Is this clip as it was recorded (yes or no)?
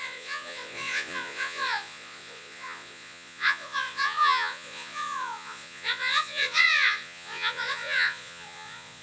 no